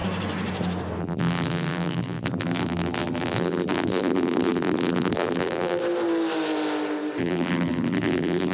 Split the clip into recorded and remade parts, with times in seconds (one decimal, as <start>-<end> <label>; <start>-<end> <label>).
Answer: 0.0-1.0 recorded; 1.0-5.8 remade; 5.8-7.2 recorded; 7.2-8.5 remade